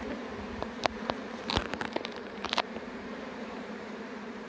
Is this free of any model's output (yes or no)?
no